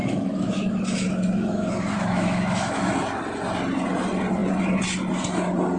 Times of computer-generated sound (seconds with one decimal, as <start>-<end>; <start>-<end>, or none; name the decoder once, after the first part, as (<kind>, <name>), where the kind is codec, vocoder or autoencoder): 0.0-2.9 (autoencoder, DAC-VAE)